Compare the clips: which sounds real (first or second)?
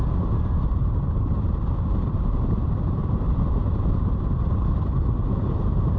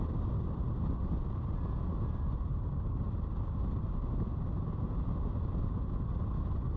second